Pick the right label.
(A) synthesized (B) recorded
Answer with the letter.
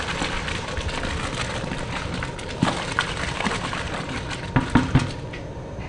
A